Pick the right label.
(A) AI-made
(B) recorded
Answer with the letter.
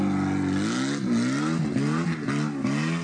B